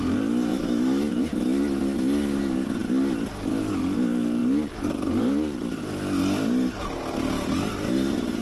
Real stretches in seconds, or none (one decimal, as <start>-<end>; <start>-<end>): 0.0-0.5; 1.2-8.4